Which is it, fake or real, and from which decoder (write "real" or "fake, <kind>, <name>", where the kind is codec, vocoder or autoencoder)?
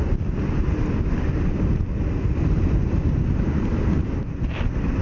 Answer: fake, vocoder, BigVGAN v2